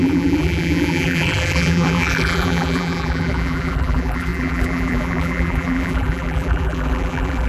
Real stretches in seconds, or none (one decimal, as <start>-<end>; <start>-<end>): none